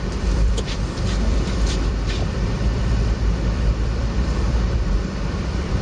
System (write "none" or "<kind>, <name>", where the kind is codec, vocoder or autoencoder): vocoder, BigVGAN v2